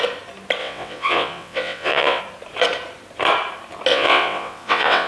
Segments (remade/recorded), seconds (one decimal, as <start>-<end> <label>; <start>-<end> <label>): 0.0-0.6 recorded; 0.6-2.2 remade; 2.2-3.9 recorded; 3.9-5.1 remade